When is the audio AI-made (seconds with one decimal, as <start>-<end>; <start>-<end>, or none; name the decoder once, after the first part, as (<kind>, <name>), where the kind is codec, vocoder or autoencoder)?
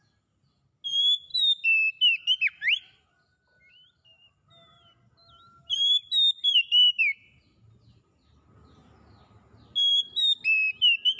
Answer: none